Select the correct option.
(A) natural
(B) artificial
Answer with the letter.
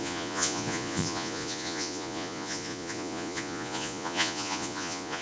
B